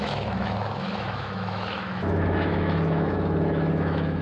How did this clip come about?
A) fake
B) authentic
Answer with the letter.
A